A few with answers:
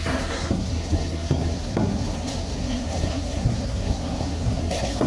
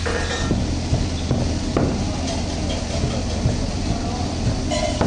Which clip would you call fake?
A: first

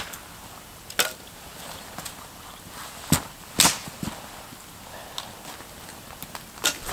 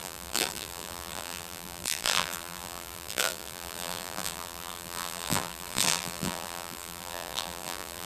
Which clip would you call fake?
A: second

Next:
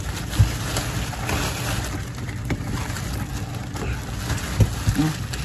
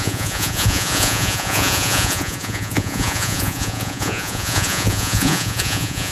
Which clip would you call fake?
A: second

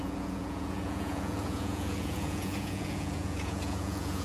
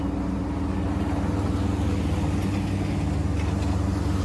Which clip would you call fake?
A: first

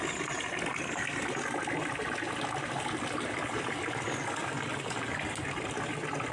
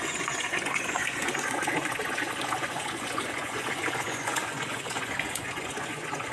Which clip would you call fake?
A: second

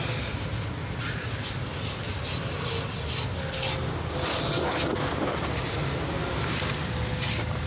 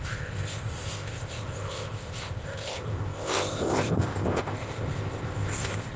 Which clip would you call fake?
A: second